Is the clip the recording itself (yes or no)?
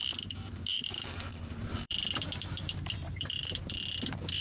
no